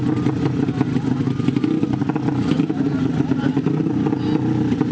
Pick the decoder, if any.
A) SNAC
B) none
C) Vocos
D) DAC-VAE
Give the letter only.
B